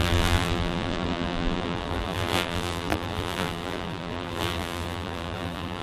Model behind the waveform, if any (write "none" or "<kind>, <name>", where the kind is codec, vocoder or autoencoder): vocoder, BigVGAN v2